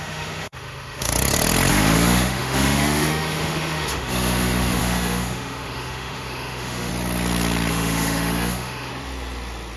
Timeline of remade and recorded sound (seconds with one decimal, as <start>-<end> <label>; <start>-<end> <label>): 0.0-1.1 remade; 1.1-1.7 recorded; 1.7-6.9 remade; 6.9-7.7 recorded; 7.7-8.9 remade; 8.9-9.8 recorded